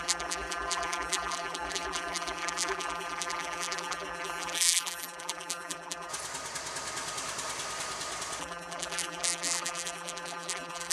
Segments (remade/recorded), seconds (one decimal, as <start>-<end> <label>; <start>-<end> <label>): 0.0-6.1 remade; 6.1-8.4 recorded; 8.4-10.9 remade